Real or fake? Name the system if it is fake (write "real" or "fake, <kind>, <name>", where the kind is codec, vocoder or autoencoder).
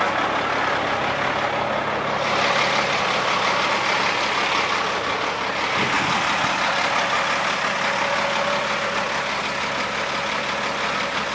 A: real